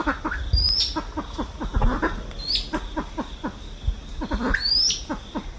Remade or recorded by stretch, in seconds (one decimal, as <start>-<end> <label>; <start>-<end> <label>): 0.0-5.6 recorded